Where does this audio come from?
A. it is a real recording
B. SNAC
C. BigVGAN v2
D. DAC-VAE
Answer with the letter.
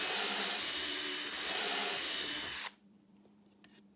C